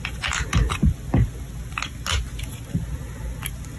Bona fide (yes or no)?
yes